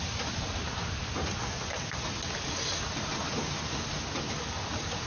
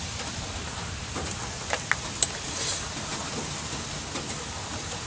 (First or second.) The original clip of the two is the first